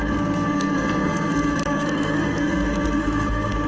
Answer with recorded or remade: remade